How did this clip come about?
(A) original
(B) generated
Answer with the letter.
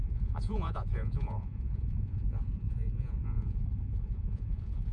B